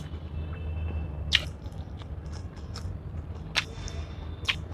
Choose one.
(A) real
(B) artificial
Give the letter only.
A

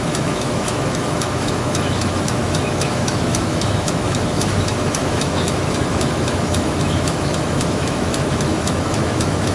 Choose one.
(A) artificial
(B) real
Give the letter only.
A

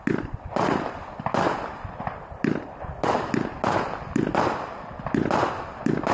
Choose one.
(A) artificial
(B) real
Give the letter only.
B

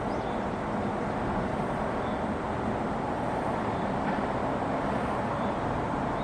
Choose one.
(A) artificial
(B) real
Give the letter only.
B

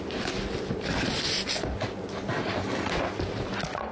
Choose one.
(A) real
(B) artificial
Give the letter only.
A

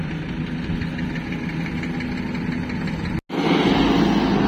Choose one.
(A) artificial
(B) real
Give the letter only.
B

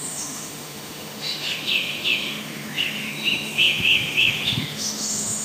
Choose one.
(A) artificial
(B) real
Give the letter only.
A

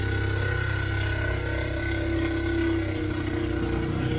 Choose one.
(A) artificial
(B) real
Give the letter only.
B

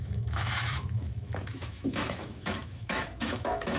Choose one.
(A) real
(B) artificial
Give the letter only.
B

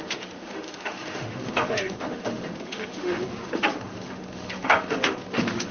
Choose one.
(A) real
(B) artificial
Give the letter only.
B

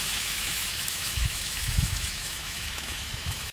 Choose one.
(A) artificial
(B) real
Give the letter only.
A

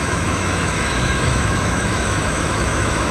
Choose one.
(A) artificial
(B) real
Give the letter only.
A